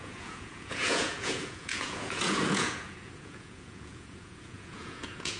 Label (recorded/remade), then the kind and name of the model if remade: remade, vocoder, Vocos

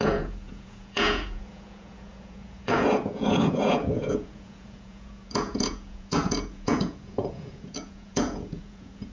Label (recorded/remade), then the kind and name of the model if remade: remade, vocoder, Vocos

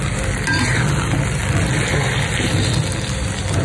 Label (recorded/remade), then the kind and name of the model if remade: recorded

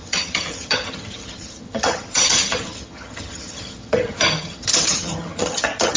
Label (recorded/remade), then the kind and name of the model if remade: remade, vocoder, HiFi-GAN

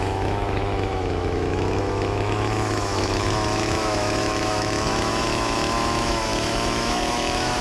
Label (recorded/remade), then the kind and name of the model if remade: remade, autoencoder, DAC-VAE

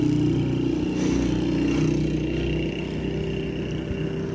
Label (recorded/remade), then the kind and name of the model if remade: recorded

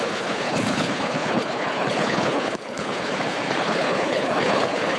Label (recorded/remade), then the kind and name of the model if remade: remade, codec, HILCodec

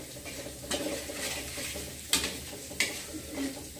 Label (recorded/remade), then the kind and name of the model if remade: recorded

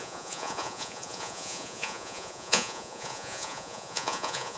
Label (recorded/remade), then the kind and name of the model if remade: remade, vocoder, Vocos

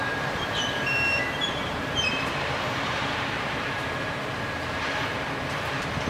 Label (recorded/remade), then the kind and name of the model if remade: remade, vocoder, BigVGAN v2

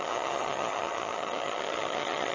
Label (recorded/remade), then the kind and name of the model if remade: remade, vocoder, HiFi-GAN